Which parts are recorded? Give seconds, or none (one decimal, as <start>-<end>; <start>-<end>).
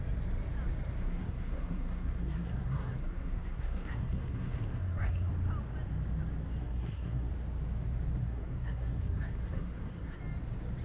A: 0.0-1.0; 5.3-6.6; 7.3-8.2; 10.2-10.8